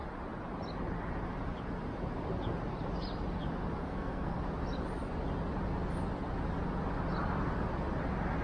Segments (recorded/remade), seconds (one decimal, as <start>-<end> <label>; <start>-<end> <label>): 0.0-3.8 recorded; 3.8-4.4 remade; 4.4-8.4 recorded